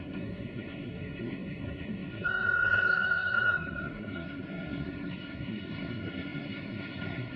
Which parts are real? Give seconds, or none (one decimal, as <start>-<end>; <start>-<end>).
none

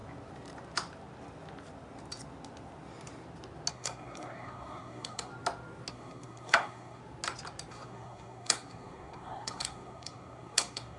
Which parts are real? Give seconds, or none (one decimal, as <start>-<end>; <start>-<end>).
0.0-3.7; 5.3-5.9; 7.0-7.7

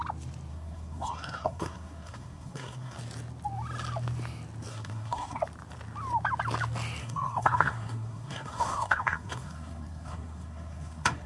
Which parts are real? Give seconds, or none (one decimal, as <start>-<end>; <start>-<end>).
0.0-0.5; 3.0-4.7; 5.4-7.0

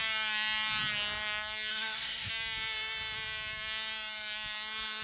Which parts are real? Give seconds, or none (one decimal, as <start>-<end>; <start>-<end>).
0.0-1.7; 2.3-5.0

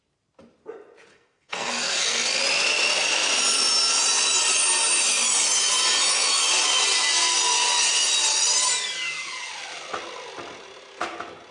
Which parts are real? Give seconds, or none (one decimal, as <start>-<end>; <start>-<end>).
0.0-1.1; 2.4-11.5

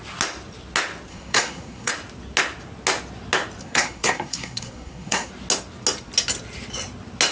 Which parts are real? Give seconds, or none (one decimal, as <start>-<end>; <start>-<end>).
0.0-1.1; 1.9-3.6; 5.3-7.3

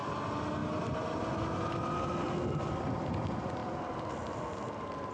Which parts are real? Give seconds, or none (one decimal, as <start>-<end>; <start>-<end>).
0.0-5.1

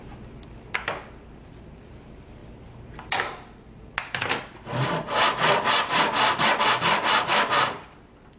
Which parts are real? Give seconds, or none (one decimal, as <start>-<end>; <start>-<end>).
0.0-8.4